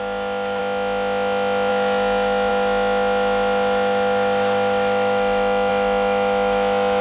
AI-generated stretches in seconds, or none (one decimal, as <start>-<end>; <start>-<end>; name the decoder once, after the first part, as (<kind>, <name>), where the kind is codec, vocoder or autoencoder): 0.0-0.6 (autoencoder, DAC-VAE); 1.7-7.0